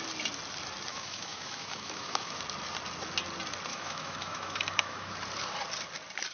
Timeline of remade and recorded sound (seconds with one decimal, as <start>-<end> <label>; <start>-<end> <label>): 0.0-0.9 recorded; 0.9-2.4 remade; 2.4-3.7 recorded; 3.7-5.1 remade; 5.1-6.3 recorded